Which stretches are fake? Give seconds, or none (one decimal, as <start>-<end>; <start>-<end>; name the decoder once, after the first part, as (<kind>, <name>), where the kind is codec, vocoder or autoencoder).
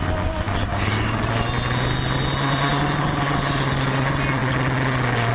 0.7-1.2 (codec, DAC)